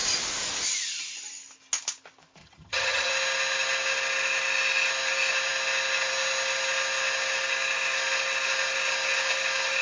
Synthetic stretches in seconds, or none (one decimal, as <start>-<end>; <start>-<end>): 2.4-3.1